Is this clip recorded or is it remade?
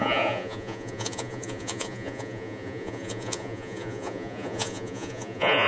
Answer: remade